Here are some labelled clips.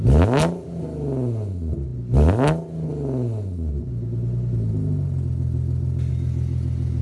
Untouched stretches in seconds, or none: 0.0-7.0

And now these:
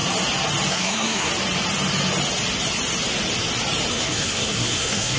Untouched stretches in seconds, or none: 0.0-0.7; 1.3-3.9

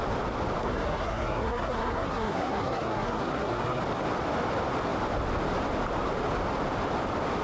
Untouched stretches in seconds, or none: 0.0-0.6; 3.8-7.4

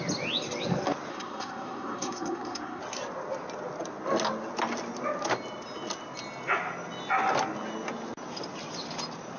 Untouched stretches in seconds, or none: 0.0-1.1; 2.8-9.4

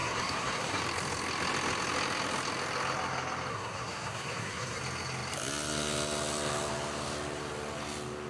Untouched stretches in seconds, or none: 0.8-3.5; 4.8-8.3